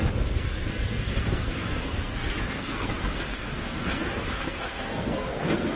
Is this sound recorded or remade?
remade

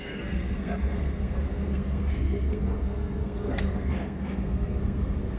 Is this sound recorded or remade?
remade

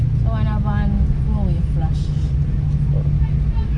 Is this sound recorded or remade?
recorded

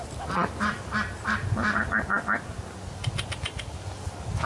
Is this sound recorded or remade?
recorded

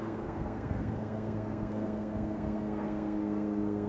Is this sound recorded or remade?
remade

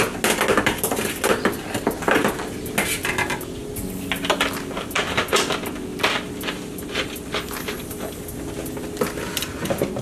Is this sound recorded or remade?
recorded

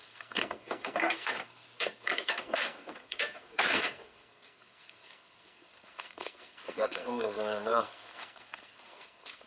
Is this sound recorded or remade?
remade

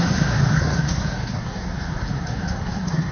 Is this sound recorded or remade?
remade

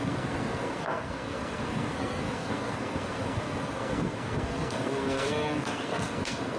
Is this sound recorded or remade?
remade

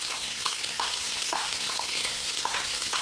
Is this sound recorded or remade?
remade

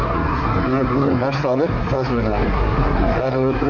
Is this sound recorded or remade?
remade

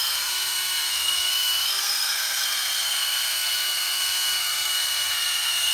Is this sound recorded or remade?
remade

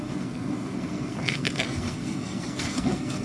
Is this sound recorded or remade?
remade